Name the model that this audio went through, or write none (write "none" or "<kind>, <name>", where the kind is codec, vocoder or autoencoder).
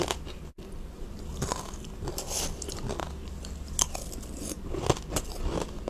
none